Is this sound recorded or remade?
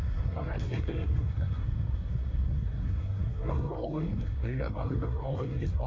remade